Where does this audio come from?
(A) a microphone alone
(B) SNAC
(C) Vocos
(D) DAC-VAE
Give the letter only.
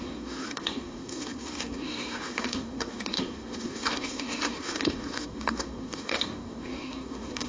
B